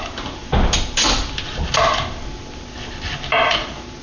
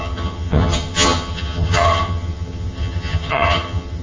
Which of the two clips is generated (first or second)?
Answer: second